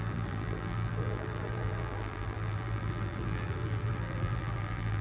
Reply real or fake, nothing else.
fake